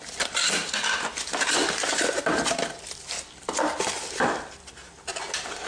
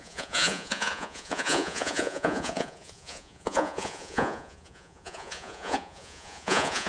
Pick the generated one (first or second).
second